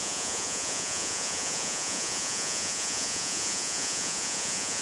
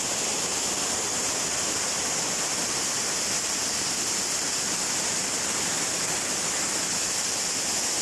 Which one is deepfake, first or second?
first